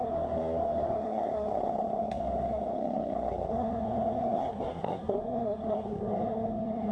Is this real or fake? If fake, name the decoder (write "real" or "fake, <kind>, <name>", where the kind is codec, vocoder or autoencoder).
fake, codec, SNAC